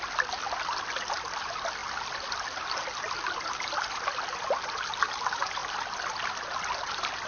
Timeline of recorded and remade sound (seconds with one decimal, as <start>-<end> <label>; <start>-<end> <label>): 0.0-7.3 recorded